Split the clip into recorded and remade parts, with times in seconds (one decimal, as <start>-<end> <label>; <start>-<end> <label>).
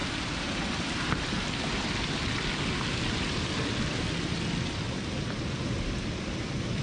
0.0-1.5 remade; 1.5-6.8 recorded